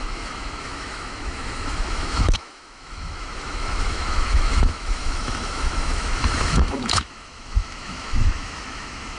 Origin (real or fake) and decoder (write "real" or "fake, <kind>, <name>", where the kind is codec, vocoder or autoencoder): fake, autoencoder, DAC-VAE